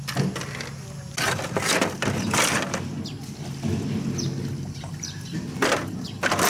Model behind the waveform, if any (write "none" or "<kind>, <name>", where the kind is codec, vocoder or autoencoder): none